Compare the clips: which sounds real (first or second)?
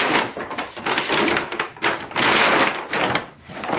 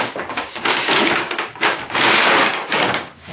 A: first